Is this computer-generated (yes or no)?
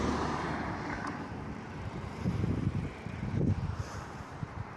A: yes